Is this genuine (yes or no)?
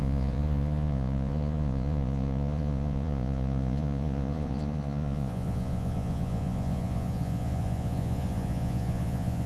no